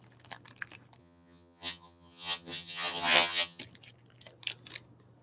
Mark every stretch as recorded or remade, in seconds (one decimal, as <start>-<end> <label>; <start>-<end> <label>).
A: 0.0-1.0 recorded; 1.0-3.6 remade; 3.6-5.2 recorded